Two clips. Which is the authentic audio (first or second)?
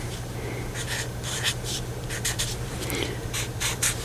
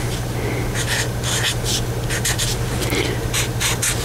second